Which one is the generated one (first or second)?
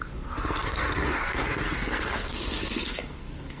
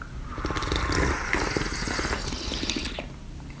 first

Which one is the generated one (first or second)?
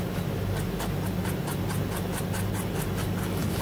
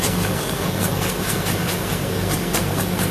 second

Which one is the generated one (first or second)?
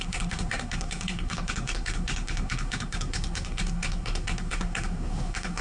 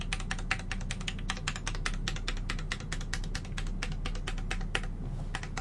first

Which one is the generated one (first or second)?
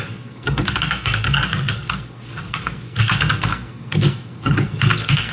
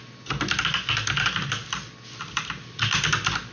first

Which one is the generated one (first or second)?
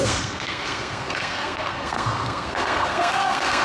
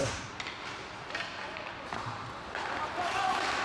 first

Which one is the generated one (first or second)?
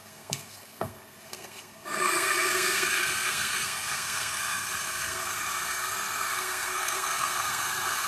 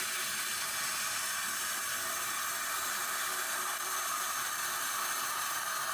first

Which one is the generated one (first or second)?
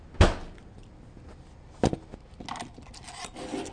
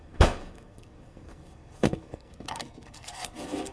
second